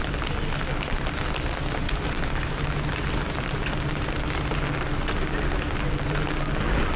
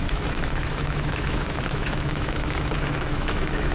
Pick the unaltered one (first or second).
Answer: first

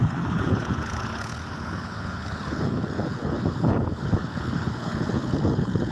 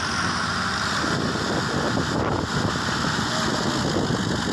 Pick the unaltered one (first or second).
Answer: second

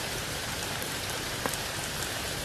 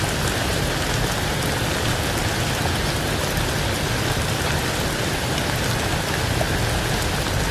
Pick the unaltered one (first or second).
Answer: second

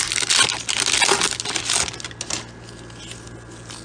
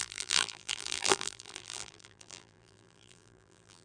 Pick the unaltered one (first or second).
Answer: first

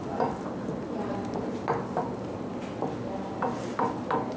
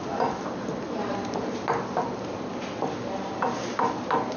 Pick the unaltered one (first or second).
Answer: first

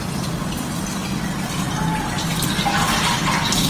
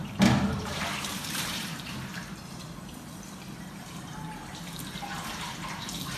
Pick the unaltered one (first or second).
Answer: first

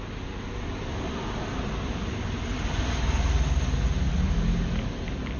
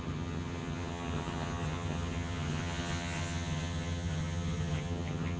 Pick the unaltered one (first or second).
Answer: first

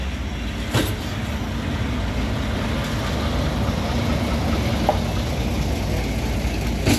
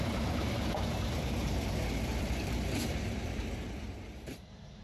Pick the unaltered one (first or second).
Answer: first